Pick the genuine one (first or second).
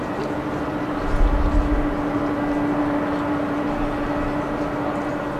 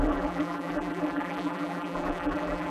first